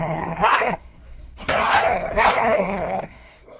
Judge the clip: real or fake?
fake